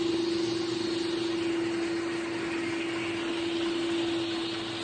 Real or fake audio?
real